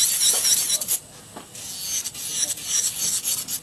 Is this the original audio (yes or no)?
yes